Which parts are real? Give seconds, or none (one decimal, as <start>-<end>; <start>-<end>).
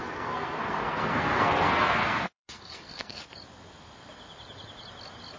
3.2-5.4